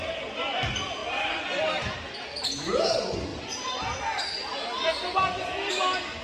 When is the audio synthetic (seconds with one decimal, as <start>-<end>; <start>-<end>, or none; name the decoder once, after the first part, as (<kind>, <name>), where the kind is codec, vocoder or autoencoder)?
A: none